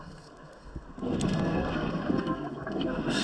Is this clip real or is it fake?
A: fake